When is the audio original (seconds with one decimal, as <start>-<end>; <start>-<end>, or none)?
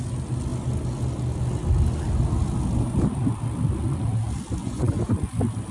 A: 0.0-4.6; 5.1-5.7